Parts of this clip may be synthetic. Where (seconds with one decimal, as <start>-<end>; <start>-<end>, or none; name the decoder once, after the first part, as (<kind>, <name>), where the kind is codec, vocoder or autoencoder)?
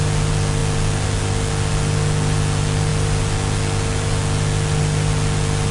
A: none